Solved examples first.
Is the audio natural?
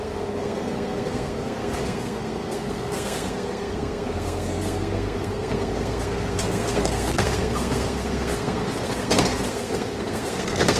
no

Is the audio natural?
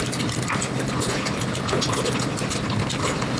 yes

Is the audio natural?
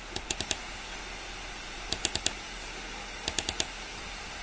yes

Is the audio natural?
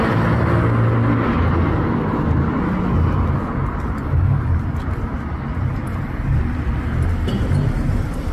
yes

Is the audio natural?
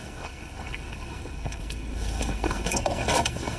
no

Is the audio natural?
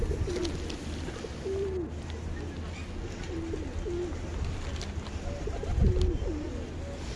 yes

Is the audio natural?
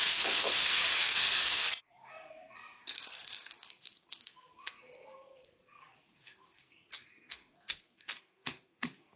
no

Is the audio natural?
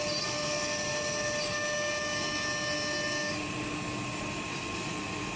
yes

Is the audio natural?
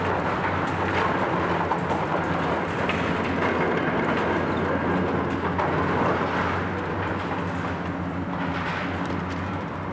yes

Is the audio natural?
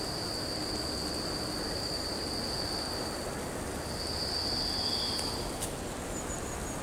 yes